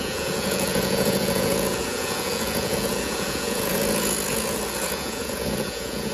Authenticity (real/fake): fake